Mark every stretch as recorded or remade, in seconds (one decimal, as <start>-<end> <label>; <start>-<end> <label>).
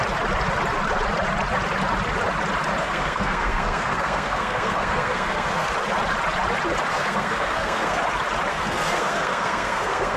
0.0-2.8 recorded; 2.8-5.7 remade; 5.7-6.9 recorded; 6.9-8.0 remade; 8.0-8.5 recorded; 8.5-10.2 remade